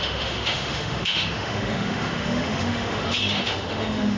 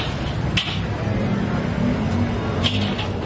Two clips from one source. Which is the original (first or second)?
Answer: second